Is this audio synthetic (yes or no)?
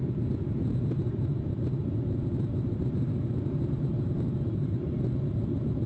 yes